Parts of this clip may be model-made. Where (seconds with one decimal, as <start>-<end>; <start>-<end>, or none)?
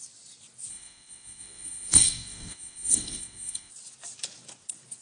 0.7-3.7